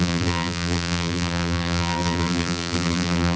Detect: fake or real fake